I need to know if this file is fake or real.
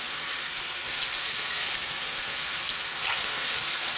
fake